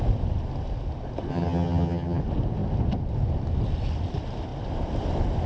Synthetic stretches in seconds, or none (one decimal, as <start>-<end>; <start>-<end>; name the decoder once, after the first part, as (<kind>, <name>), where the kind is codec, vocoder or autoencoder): 1.3-2.2 (vocoder, HiFi-GAN)